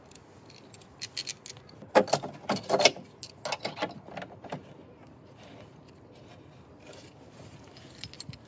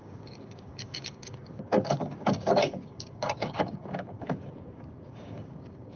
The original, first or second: first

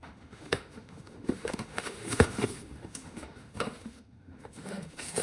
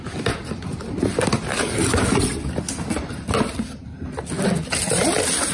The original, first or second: second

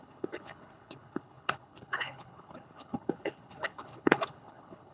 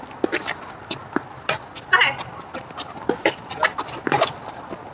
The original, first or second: second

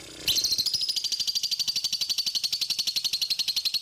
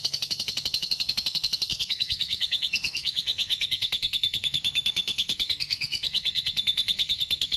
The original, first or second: first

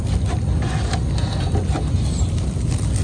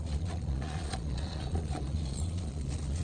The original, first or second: first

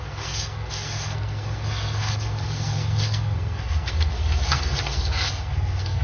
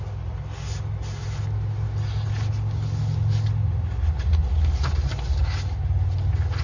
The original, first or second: second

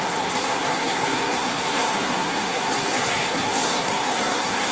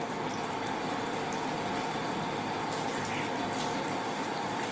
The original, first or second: second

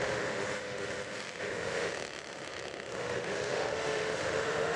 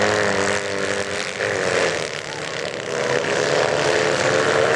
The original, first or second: second